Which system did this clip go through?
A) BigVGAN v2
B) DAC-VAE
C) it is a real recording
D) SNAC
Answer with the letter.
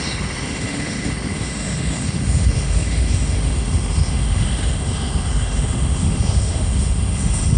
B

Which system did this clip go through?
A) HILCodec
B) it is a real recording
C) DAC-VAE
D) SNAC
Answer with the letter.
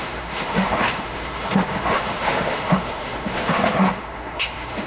C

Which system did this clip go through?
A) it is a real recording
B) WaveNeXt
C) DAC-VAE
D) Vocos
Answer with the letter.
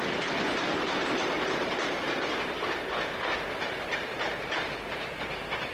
A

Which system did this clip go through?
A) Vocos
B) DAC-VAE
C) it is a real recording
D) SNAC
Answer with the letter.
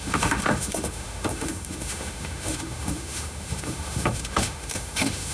B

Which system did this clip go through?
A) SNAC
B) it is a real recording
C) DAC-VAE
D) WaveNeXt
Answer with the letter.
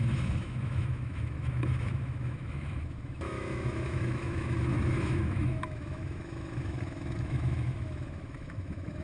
C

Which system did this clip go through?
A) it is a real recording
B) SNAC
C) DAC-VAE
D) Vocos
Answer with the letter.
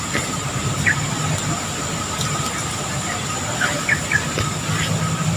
A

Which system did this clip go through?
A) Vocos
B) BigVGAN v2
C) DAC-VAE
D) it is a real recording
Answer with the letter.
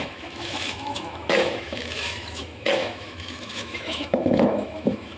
C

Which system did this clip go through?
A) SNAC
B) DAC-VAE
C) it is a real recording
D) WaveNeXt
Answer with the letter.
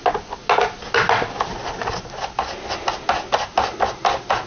C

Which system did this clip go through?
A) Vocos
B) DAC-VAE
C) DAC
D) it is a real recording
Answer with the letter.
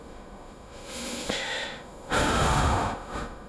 B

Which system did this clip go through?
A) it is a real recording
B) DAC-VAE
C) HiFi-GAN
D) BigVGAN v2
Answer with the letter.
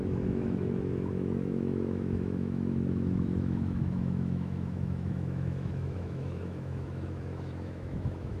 B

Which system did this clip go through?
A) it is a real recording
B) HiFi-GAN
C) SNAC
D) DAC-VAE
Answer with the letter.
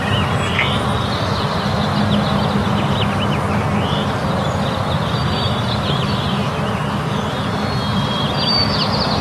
A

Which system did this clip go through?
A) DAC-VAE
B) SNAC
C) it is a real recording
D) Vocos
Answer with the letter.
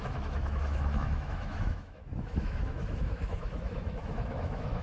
A